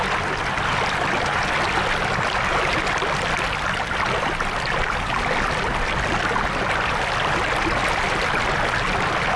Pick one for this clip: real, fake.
real